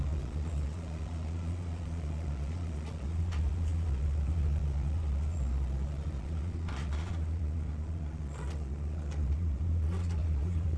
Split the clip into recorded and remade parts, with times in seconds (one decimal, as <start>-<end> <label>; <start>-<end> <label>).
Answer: 0.0-10.8 remade